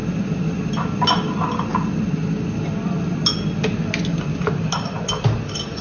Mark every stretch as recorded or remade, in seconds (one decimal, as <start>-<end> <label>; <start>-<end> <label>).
0.0-5.8 recorded